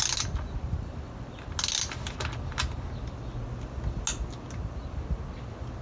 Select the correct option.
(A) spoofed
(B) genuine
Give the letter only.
B